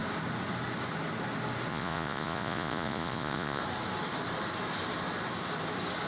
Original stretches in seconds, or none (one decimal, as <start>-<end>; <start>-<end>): 0.0-1.7; 3.6-6.1